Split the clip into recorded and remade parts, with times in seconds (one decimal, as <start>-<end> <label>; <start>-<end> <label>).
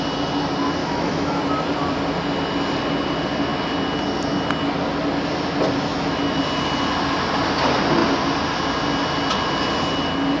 0.0-0.8 recorded; 0.8-1.4 remade; 1.4-5.9 recorded; 5.9-6.4 remade; 6.4-10.4 recorded